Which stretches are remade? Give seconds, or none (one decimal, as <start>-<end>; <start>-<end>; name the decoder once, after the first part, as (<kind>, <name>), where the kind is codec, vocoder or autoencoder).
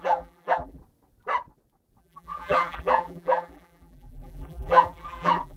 0.0-0.8 (vocoder, BigVGAN v2); 2.0-5.6